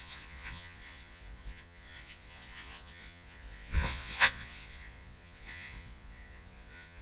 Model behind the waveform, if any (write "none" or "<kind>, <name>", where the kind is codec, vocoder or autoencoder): vocoder, Vocos